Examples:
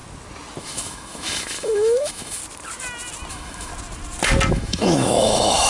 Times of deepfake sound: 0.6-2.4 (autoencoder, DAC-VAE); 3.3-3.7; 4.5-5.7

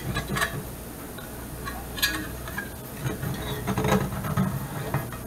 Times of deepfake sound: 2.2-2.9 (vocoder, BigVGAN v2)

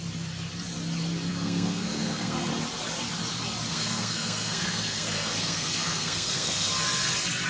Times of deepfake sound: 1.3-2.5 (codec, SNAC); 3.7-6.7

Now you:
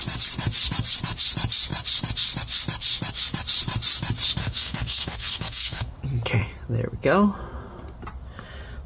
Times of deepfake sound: 4.4-6.0 (codec, SNAC)